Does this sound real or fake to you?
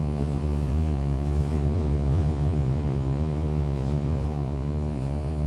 fake